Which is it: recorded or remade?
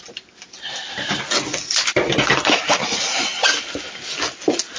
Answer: recorded